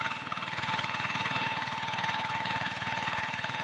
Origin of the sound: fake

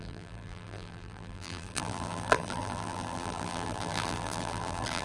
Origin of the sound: fake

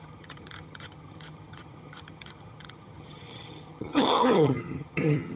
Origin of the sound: fake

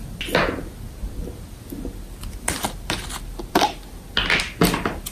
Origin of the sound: real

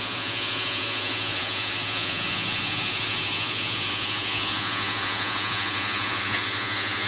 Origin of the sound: fake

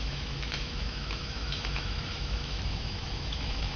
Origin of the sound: fake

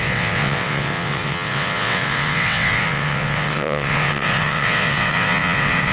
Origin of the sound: fake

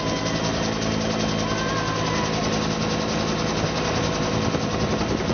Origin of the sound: real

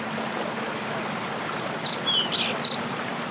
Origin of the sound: real